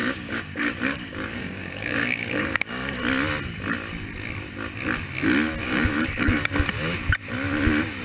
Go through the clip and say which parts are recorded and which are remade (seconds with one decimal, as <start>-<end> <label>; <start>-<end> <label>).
0.0-3.0 remade; 3.0-5.6 recorded; 5.6-6.5 remade; 6.5-8.0 recorded